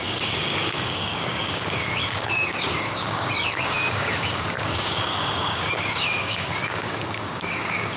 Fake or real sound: fake